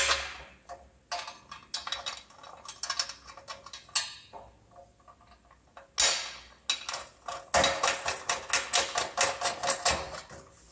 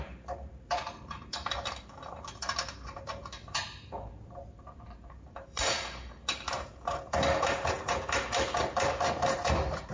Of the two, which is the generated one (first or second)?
second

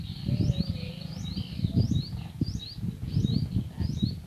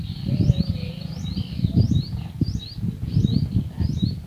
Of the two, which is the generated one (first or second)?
second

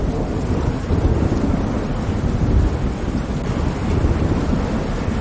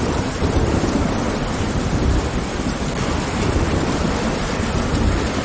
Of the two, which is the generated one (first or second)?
second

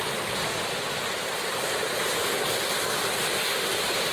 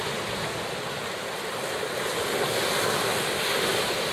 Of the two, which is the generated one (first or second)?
first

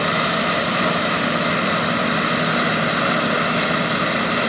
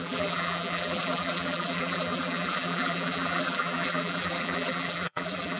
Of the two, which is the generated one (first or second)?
second